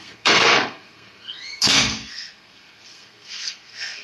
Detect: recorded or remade remade